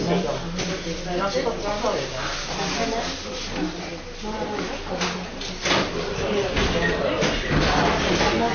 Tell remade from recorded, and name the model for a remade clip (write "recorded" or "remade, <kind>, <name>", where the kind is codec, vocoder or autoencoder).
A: recorded